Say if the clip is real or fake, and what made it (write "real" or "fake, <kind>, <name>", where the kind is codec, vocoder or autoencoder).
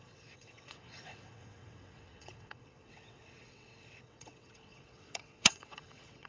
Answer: fake, vocoder, WaveNeXt